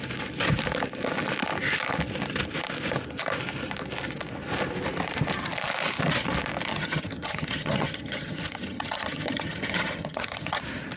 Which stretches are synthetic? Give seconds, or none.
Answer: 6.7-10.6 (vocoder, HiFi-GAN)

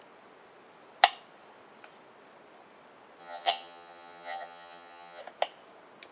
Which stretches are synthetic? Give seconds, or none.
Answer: 3.2-5.2 (vocoder, HiFi-GAN)

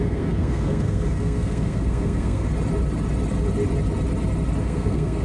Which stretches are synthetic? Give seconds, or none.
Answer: 0.0-2.5 (codec, SNAC); 4.6-5.2

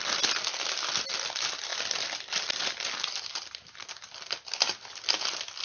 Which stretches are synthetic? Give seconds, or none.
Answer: none